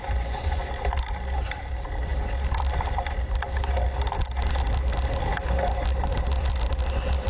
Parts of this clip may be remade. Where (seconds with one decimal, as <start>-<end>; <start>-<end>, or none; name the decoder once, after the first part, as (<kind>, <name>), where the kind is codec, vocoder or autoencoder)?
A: 0.0-0.7 (vocoder, Vocos)